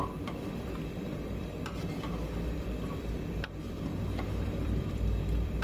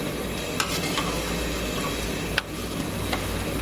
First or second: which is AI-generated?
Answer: first